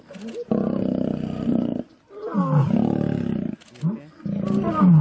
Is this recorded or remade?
recorded